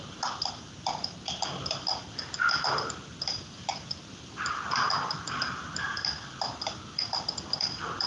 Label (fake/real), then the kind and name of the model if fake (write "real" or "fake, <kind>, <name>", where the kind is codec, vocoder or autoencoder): fake, vocoder, BigVGAN v2